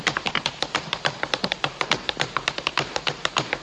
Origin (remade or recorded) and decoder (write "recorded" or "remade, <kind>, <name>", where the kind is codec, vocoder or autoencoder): remade, vocoder, BigVGAN v2